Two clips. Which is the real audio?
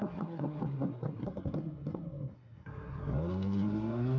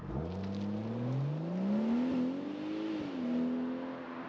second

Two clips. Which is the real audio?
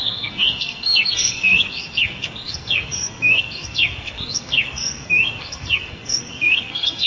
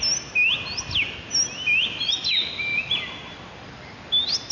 second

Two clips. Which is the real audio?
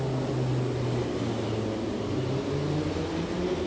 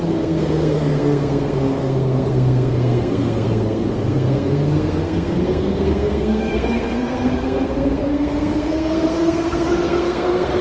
first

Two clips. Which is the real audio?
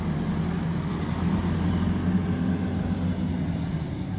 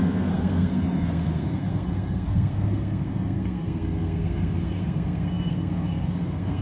first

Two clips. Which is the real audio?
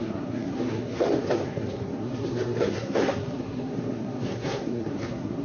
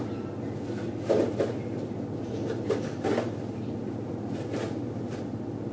second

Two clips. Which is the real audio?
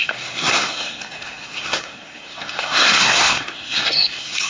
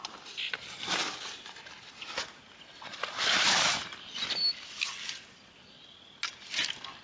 second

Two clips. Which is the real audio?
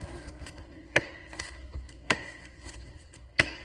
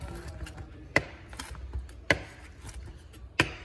second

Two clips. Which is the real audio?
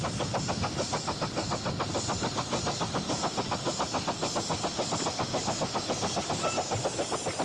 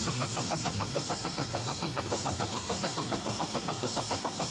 first